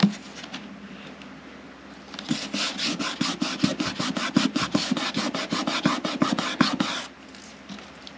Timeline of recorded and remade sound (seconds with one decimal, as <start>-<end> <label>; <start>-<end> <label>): 0.0-8.2 recorded